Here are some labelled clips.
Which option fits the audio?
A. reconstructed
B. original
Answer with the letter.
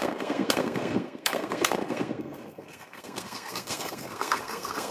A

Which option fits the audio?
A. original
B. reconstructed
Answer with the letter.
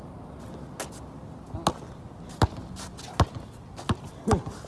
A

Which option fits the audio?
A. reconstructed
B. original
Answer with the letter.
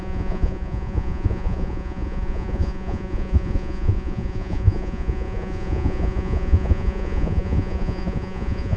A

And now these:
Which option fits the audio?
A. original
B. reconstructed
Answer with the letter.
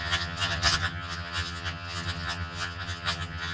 B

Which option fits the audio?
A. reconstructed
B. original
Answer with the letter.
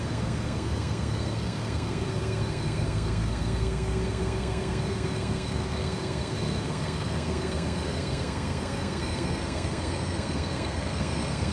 A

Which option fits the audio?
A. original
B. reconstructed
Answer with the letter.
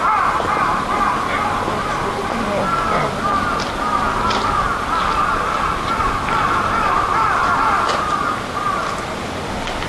A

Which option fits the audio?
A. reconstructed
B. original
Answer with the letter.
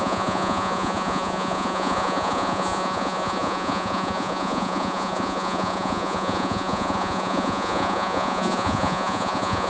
A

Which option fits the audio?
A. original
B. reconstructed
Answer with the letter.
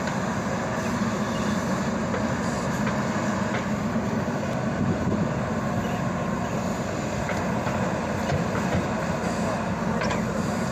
A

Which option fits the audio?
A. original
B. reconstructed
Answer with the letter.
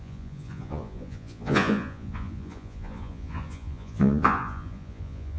B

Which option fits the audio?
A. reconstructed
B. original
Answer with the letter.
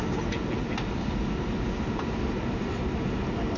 B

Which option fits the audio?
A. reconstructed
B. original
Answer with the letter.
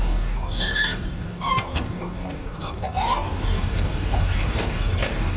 A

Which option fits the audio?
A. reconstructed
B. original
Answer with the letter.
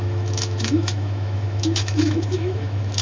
A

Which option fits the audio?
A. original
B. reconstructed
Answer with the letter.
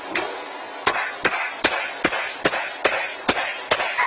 A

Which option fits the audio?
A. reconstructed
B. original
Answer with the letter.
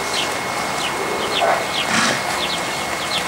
B